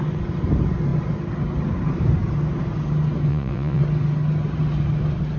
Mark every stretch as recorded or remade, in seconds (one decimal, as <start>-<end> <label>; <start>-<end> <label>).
0.0-3.3 recorded; 3.3-3.8 remade; 3.8-5.4 recorded